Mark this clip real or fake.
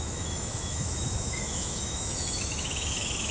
fake